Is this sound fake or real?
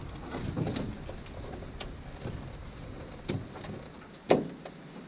real